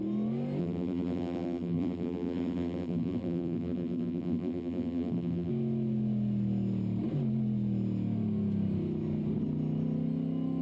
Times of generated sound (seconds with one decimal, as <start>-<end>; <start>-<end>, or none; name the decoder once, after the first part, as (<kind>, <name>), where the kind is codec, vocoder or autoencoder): 0.6-5.5 (vocoder, BigVGAN v2)